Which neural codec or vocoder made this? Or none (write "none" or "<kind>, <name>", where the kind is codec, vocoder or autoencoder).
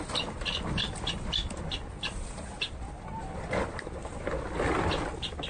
none